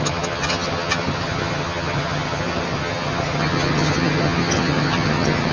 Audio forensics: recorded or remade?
remade